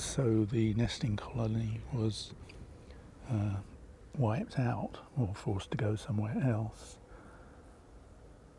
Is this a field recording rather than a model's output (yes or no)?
yes